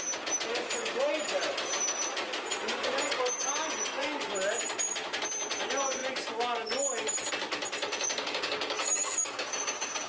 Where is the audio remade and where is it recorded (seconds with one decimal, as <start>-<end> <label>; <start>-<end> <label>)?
0.0-8.2 recorded; 8.2-10.1 remade